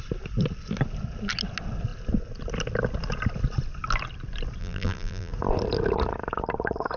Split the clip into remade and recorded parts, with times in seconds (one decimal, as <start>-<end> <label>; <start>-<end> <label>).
0.0-4.6 recorded; 4.6-5.3 remade; 5.3-7.0 recorded